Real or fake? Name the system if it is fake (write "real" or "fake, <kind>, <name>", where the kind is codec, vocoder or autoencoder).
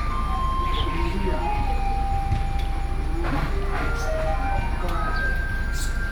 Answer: real